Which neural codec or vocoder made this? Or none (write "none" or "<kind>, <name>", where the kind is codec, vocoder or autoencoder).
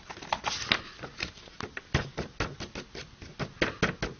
none